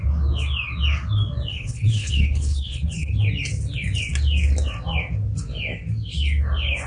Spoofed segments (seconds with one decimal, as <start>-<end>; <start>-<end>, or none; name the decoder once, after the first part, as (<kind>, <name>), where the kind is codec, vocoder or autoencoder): 1.5-3.2 (codec, HILCodec)